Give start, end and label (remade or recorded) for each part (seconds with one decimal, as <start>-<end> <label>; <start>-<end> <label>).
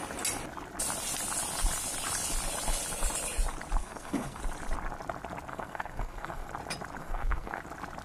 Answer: 0.0-3.8 recorded; 3.8-4.4 remade; 4.4-5.5 recorded; 5.5-6.5 remade; 6.5-7.0 recorded; 7.0-7.6 remade; 7.6-8.0 recorded